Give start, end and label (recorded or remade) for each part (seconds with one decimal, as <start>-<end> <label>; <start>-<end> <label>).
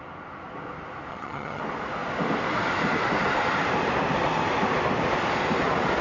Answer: 0.0-1.1 recorded; 1.1-1.6 remade; 1.6-6.0 recorded